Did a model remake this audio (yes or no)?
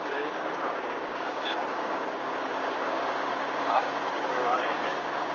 yes